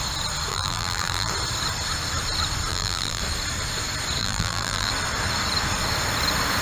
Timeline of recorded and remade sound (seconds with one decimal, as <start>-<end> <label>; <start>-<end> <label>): 0.0-0.5 recorded; 0.5-1.3 remade; 1.3-2.7 recorded; 2.7-3.2 remade; 3.2-4.2 recorded; 4.2-4.9 remade; 4.9-6.6 recorded